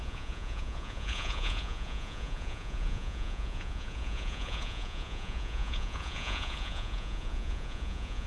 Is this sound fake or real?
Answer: fake